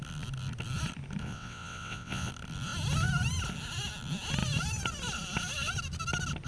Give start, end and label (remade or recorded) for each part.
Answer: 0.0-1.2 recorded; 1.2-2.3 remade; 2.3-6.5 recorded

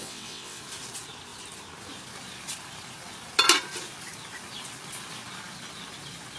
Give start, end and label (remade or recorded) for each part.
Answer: 0.0-0.6 remade; 0.6-6.4 recorded

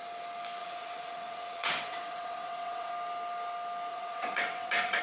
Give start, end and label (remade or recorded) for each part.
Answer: 0.0-0.6 recorded; 0.6-2.9 remade; 2.9-3.9 recorded; 3.9-5.0 remade

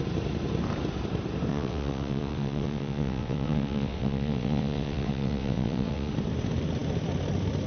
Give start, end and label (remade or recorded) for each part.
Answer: 0.0-1.5 recorded; 1.5-6.1 remade; 6.1-7.7 recorded

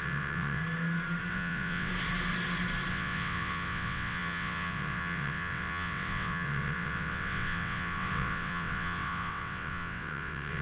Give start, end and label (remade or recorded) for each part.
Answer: 0.0-0.6 remade; 0.6-1.3 recorded; 1.3-1.9 remade; 1.9-2.9 recorded; 2.9-10.6 remade

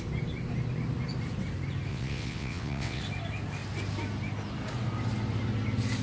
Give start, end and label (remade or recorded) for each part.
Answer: 0.0-1.9 recorded; 1.9-3.0 remade; 3.0-6.0 recorded

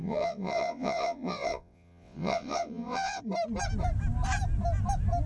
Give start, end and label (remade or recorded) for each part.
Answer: 0.0-3.2 remade; 3.2-5.3 recorded